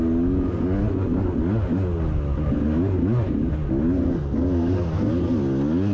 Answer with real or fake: real